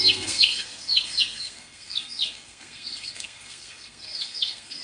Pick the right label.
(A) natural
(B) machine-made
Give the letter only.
B